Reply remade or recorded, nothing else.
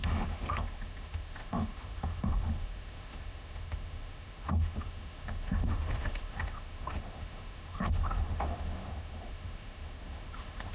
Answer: remade